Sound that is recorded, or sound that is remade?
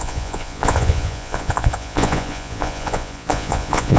remade